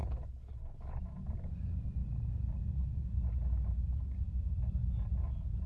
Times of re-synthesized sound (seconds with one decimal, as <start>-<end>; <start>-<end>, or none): 0.0-1.0

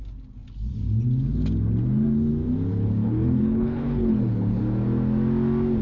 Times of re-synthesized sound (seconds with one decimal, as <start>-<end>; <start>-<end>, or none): 2.7-4.6

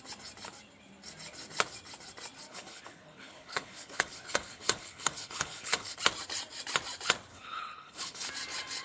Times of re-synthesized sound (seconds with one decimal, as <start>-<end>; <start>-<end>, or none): 2.5-6.0; 7.3-8.3

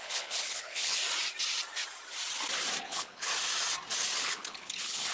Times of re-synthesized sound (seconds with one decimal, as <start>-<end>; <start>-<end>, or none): 0.0-1.0; 2.8-3.3; 4.2-5.1

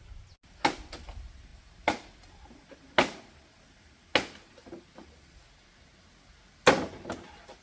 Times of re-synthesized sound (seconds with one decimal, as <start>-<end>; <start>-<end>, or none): none

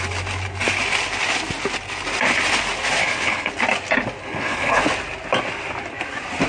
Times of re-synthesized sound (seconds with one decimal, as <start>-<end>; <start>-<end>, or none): 3.0-3.5; 4.2-4.8

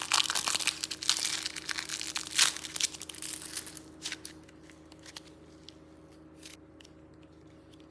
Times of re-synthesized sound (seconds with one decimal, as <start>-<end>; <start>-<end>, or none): none